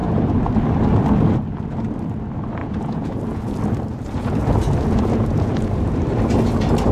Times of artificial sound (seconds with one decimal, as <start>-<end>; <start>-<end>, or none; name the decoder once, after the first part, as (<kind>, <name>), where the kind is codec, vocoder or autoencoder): 2.6-3.5 (vocoder, Vocos); 3.9-6.0